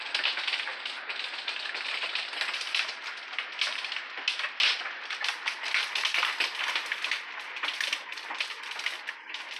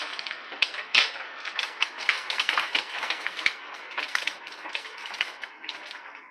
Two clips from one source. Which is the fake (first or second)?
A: second